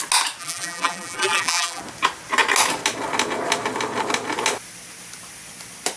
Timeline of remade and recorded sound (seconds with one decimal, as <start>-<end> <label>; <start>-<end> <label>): 0.0-0.4 recorded; 0.4-1.8 remade; 1.8-6.0 recorded